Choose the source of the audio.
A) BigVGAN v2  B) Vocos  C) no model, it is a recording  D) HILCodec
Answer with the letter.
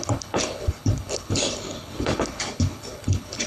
D